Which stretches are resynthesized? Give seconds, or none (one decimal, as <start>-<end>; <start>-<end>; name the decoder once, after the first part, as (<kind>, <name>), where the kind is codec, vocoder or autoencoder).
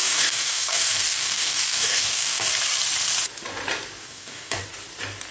0.0-2.5 (codec, DAC); 4.0-4.6